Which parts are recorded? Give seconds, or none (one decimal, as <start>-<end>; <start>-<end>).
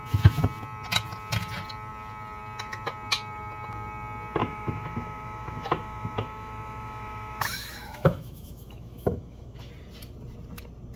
0.0-4.4; 9.7-11.0